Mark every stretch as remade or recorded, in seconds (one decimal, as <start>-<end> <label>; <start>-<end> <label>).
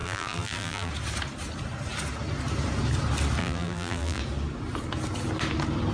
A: 0.0-0.9 remade; 0.9-3.4 recorded; 3.4-4.2 remade; 4.2-5.9 recorded